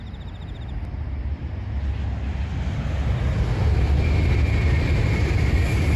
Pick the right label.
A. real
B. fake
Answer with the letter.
A